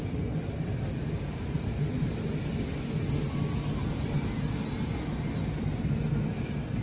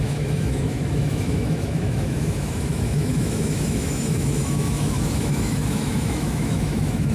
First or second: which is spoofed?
second